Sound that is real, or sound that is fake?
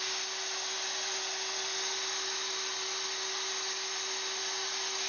real